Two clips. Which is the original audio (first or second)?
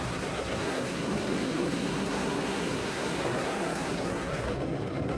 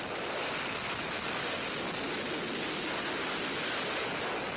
second